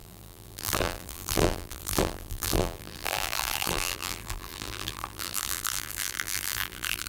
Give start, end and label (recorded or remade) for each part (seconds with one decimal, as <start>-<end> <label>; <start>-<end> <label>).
0.0-7.1 remade